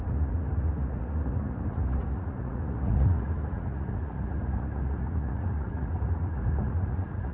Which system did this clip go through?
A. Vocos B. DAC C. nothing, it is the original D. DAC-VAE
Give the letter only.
A